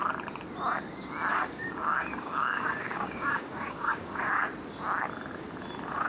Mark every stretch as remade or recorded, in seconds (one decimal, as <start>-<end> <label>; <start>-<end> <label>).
0.0-1.3 recorded; 1.3-4.3 remade; 4.3-6.1 recorded